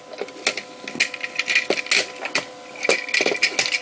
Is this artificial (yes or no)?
no